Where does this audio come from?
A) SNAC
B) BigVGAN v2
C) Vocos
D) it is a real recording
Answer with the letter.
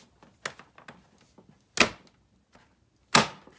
D